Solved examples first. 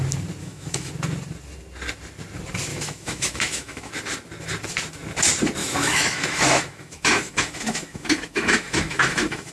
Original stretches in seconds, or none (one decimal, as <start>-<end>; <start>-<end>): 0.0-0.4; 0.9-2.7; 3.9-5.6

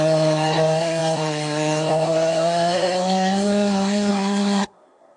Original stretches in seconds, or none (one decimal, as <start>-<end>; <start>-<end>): none

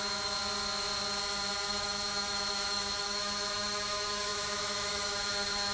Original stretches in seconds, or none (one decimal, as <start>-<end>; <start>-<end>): 0.4-1.5

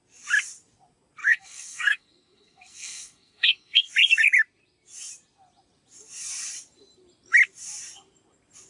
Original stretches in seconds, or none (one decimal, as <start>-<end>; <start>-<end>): 0.0-1.2; 3.9-8.7

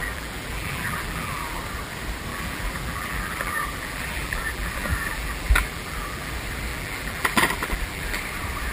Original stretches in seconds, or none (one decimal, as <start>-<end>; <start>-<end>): 1.6-2.3; 6.3-6.7; 8.2-8.7

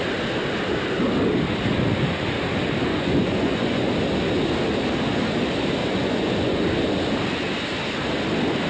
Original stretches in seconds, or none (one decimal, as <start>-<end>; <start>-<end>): 0.0-2.9; 3.9-5.8; 6.6-8.7